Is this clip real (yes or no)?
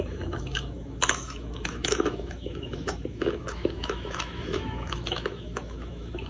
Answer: no